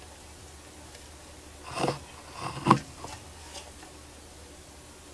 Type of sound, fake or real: real